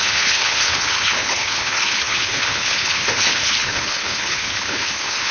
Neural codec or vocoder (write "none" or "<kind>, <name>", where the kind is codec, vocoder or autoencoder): codec, HILCodec